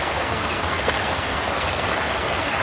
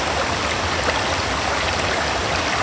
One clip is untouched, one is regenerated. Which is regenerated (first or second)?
first